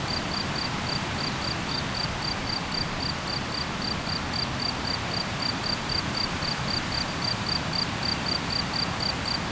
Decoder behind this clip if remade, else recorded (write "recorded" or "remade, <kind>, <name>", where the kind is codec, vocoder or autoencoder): recorded